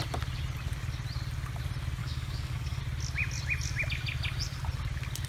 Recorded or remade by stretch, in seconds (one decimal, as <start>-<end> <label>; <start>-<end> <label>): 0.0-2.0 recorded; 2.0-2.8 remade; 2.8-5.3 recorded